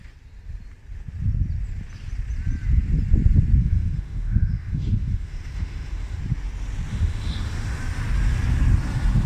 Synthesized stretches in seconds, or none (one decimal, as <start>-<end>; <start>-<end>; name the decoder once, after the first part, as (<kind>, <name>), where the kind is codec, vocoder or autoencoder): 3.6-6.2 (autoencoder, DAC-VAE); 6.9-7.8